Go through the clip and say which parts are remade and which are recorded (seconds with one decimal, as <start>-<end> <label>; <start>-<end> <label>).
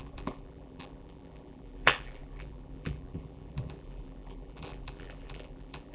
0.0-5.9 remade